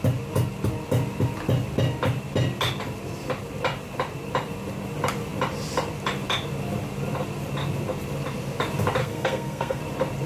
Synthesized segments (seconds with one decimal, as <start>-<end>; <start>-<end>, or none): 9.0-9.8

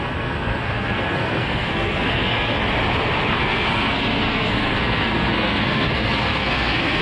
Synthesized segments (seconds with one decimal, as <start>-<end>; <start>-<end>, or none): 0.0-2.6; 3.4-7.0

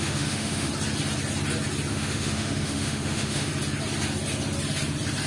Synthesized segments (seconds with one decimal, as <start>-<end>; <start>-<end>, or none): 0.0-0.7; 1.9-3.5